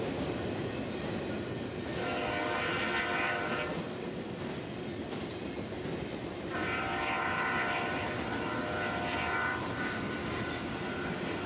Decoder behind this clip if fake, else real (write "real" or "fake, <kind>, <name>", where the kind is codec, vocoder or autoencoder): real